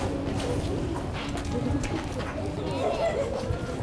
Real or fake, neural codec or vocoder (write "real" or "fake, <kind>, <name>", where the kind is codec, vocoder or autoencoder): real